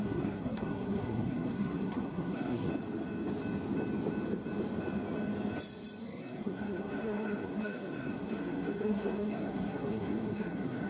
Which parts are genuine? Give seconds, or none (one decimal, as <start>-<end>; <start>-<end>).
2.7-6.0